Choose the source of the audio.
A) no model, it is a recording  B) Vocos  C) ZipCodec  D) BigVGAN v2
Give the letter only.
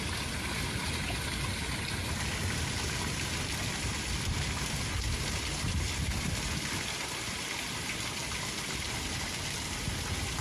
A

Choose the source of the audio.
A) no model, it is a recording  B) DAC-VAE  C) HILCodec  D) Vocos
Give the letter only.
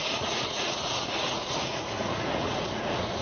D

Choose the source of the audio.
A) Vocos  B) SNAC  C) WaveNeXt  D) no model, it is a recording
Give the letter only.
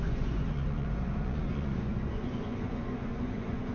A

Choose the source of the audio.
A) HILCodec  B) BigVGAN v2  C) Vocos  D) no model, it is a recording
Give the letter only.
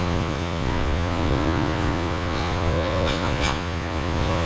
C